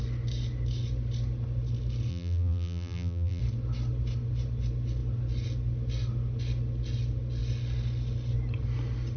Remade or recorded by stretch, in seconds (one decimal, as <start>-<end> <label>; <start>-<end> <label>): 0.0-2.1 recorded; 2.1-3.4 remade; 3.4-9.2 recorded